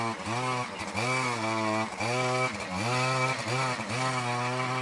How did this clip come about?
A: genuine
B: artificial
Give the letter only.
A